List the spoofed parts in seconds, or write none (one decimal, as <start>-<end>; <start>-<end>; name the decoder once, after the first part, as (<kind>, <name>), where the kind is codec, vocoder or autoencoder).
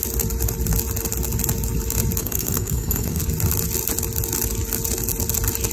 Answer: 2.2-3.2 (codec, SNAC)